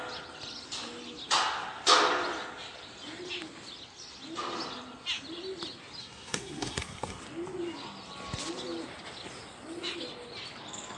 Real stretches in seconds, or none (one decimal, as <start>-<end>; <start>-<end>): 0.0-6.0; 7.2-11.0